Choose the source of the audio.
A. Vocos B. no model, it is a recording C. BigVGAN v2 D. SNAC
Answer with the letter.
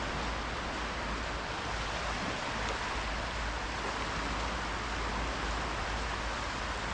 B